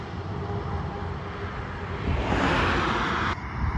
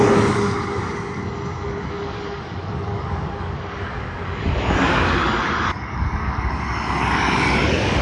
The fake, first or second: second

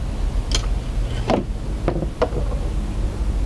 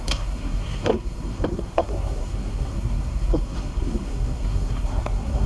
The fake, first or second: second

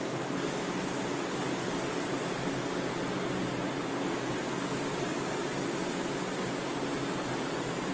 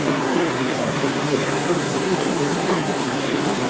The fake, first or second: second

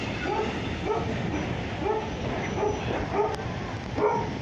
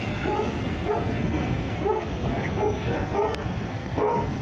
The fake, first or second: second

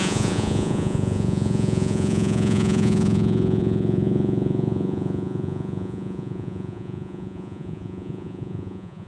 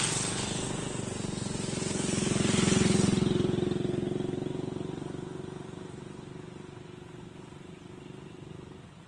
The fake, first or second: first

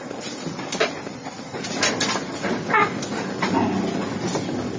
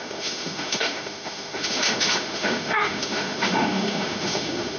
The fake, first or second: second